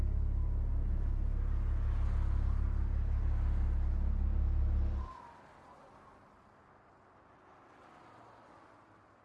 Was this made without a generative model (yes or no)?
yes